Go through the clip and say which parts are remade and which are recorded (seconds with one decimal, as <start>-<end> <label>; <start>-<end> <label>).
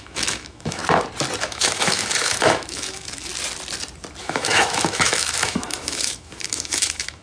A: 0.0-0.8 remade; 0.8-1.4 recorded; 1.4-3.3 remade; 3.3-4.2 recorded; 4.2-7.2 remade